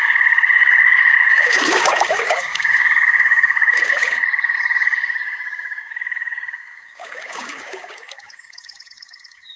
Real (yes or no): no